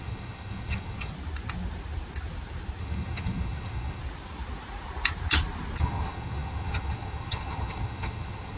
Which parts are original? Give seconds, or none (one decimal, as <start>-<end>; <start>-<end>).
1.1-2.8; 4.0-5.8